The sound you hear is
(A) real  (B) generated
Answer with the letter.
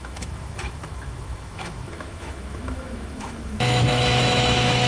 B